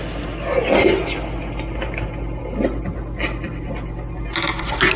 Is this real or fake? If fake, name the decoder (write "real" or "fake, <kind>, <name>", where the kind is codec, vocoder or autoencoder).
real